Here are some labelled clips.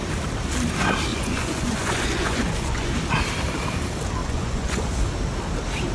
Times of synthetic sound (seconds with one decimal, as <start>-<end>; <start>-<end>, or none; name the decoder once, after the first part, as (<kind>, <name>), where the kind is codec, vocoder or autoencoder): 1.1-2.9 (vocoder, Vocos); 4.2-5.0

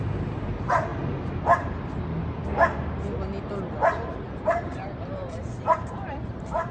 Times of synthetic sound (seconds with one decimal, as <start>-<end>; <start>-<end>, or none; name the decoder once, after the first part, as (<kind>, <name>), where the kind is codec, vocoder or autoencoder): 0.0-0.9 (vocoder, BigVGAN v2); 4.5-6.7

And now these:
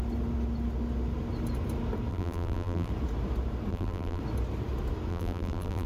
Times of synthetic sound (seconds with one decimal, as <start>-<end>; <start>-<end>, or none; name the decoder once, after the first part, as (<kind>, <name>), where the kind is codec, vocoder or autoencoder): 2.1-2.9 (vocoder, BigVGAN v2); 3.7-4.2; 5.1-5.9

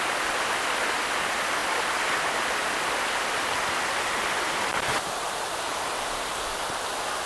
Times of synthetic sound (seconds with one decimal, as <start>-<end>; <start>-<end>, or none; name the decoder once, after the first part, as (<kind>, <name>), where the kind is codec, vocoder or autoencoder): none